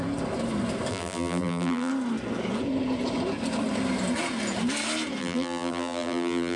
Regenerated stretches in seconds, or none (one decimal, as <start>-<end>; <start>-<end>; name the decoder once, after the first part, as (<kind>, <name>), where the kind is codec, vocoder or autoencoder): 0.9-1.9 (vocoder, BigVGAN v2); 5.2-6.6